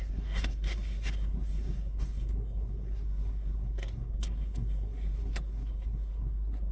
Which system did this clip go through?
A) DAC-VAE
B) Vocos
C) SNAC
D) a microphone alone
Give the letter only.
C